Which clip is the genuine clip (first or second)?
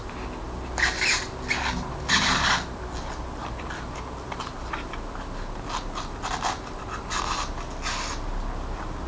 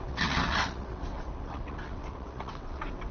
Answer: first